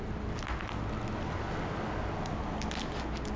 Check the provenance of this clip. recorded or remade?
recorded